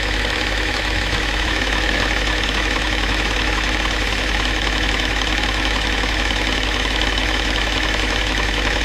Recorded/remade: remade